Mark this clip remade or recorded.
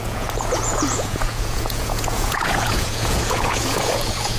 remade